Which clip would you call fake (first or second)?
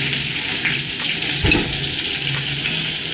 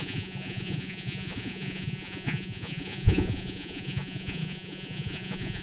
second